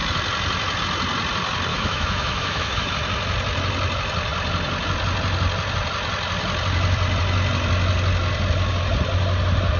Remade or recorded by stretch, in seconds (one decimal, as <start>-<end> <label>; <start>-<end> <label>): 0.0-1.7 recorded; 1.7-2.9 remade; 2.9-9.8 recorded